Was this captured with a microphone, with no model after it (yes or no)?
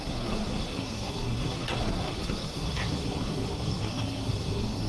no